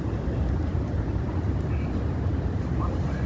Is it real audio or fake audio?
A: real